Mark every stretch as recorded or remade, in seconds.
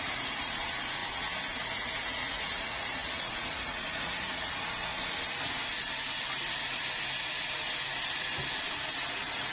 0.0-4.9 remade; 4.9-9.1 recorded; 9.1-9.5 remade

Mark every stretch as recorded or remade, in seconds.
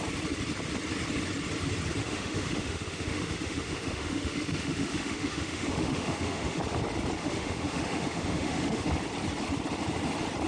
0.0-2.0 recorded; 2.0-6.6 remade; 6.6-7.2 recorded; 7.2-8.9 remade; 8.9-10.5 recorded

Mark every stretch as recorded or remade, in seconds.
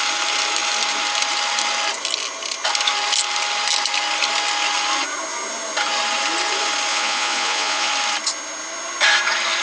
0.0-6.9 recorded; 6.9-7.9 remade; 7.9-9.6 recorded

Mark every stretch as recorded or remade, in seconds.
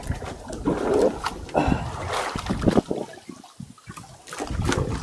0.0-5.0 recorded